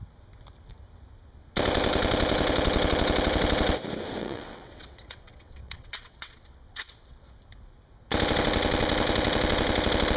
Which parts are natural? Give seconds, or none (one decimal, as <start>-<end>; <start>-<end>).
0.0-4.2; 7.3-10.2